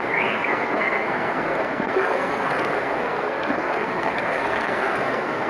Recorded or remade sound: remade